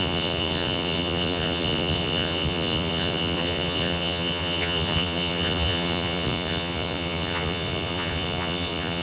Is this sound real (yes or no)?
no